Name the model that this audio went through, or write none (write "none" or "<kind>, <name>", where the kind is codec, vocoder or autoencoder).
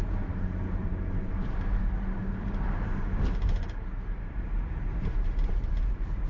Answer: vocoder, BigVGAN v2